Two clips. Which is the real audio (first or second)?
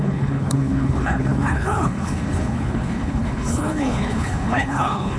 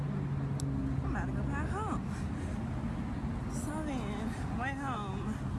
second